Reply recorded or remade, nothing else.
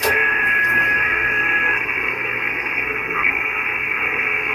remade